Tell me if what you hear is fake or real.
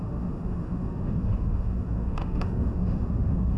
fake